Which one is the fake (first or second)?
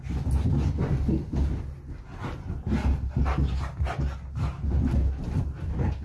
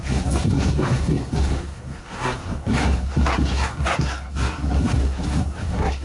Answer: second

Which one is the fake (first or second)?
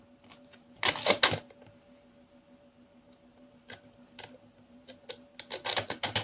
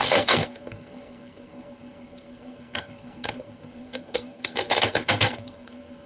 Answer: second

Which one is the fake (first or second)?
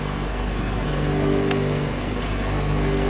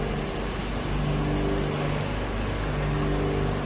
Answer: first